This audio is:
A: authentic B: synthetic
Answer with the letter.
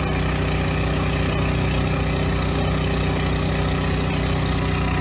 A